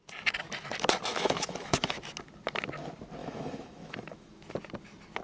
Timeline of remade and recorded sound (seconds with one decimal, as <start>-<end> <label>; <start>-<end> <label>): 0.0-1.1 recorded; 1.1-1.9 remade; 1.9-3.2 recorded; 3.2-4.5 remade; 4.5-5.2 recorded